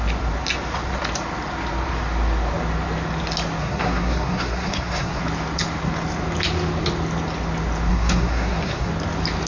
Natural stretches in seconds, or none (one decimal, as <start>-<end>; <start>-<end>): 0.0-3.6; 5.2-7.9; 8.9-9.5